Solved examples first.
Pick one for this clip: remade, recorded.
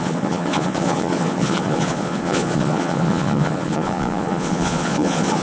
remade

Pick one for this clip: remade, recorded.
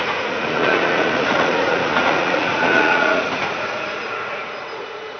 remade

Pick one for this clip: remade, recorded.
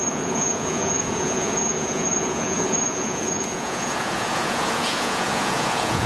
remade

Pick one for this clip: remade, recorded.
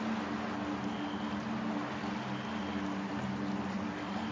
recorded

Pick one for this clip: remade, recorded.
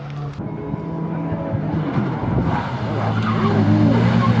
recorded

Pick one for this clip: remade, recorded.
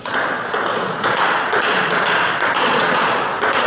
remade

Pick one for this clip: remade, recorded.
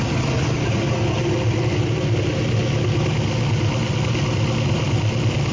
recorded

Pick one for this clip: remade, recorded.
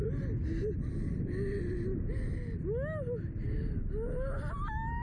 recorded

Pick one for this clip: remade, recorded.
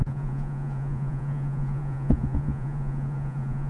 remade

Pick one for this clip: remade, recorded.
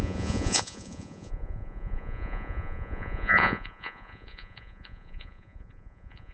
remade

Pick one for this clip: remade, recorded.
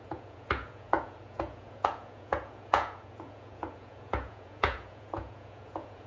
remade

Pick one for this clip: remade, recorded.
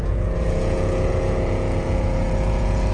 remade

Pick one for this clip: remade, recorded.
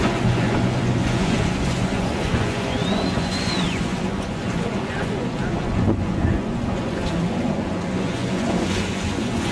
remade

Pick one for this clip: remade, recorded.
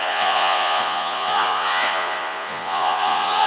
remade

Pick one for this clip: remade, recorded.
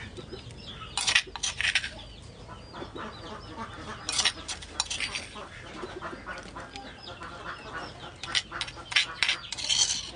recorded